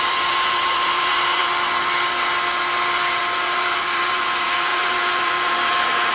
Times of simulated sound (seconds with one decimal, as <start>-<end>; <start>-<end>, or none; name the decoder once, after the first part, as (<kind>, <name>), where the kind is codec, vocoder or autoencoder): 0.0-1.4 (vocoder, BigVGAN v2); 3.2-6.1